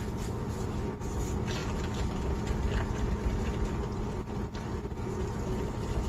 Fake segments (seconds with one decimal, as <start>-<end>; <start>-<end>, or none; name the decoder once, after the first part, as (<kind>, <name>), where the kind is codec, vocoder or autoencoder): 1.6-2.3 (vocoder, BigVGAN v2)